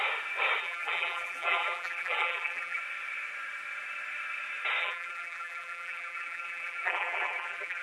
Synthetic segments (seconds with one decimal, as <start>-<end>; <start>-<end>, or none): 0.6-2.8; 4.8-7.8